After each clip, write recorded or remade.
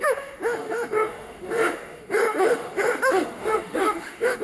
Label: remade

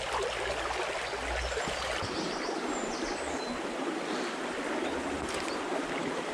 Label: recorded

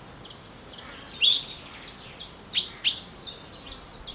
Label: recorded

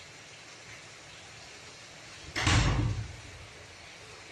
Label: recorded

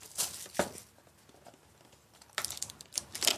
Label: recorded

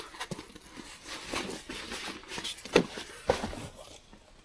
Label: recorded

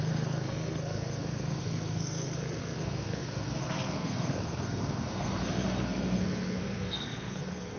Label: remade